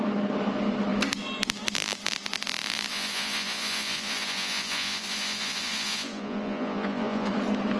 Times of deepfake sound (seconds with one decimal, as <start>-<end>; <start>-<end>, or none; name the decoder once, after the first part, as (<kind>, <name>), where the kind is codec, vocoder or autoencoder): 2.9-7.3 (vocoder, Vocos)